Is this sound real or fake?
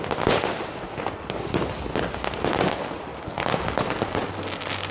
real